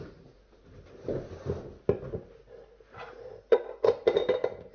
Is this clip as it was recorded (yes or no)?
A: yes